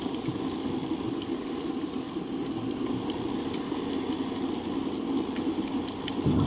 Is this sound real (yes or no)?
yes